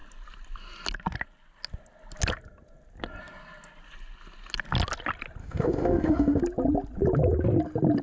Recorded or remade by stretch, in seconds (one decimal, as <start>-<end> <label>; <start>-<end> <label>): 0.0-5.4 recorded; 5.4-6.4 remade; 6.4-8.0 recorded